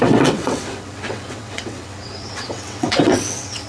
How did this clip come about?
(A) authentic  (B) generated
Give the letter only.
B